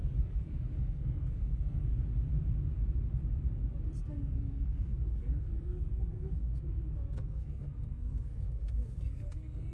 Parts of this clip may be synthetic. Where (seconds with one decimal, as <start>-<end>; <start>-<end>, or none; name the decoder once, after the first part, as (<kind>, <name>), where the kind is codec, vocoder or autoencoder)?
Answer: 0.0-1.9 (codec, SNAC); 4.0-9.7